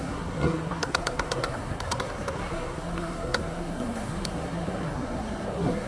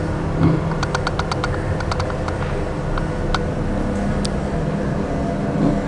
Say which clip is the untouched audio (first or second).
second